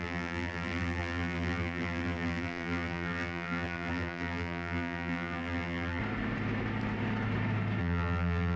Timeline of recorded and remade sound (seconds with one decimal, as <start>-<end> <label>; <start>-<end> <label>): 0.0-6.0 remade; 6.0-7.8 recorded; 7.8-8.6 remade